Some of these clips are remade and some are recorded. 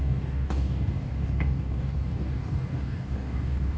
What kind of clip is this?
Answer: remade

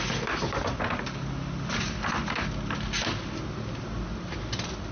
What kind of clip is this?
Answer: recorded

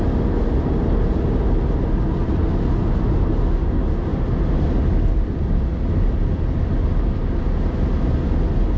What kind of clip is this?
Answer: recorded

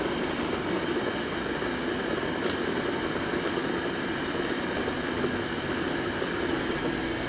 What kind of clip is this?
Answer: recorded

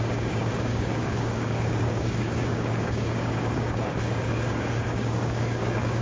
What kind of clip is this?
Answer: remade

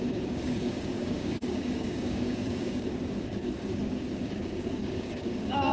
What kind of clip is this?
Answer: remade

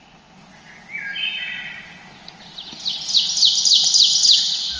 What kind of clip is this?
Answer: recorded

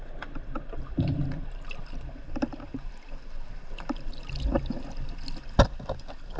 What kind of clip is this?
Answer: recorded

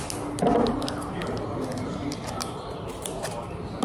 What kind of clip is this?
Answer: recorded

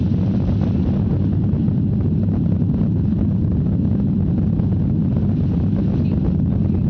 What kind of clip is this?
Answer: recorded